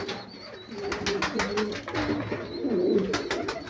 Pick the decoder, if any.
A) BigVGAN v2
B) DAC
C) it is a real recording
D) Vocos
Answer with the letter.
C